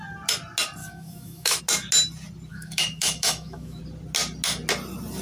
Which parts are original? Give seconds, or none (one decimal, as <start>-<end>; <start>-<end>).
0.0-0.8; 1.6-2.5; 3.8-5.2